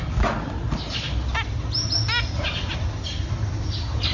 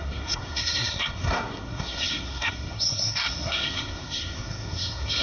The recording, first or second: first